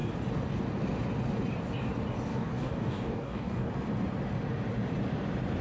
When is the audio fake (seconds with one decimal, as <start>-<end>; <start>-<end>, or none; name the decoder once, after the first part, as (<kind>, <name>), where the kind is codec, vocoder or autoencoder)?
2.3-3.7 (codec, DAC)